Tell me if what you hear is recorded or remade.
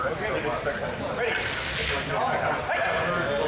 recorded